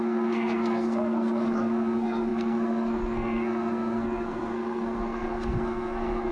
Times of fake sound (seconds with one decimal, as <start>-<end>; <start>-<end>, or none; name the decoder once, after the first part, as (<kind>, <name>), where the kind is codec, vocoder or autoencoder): 0.0-6.3 (codec, SNAC)